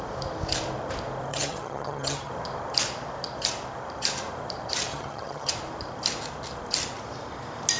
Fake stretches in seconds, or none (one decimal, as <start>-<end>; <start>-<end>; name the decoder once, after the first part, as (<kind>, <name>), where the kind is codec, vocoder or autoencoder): 1.3-2.3 (vocoder, HiFi-GAN); 4.9-5.5